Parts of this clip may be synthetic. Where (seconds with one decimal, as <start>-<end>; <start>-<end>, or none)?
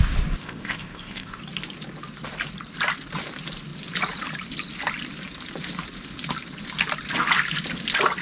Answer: 0.4-1.4